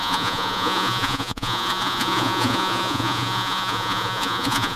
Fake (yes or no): yes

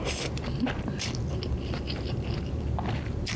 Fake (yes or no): no